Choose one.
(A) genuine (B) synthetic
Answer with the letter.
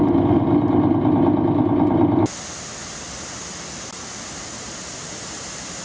A